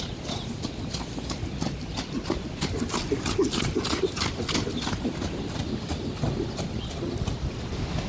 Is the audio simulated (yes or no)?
no